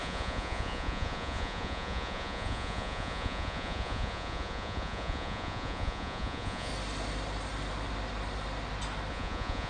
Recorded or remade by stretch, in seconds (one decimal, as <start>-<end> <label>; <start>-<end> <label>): 0.0-6.7 remade; 6.7-9.1 recorded; 9.1-9.7 remade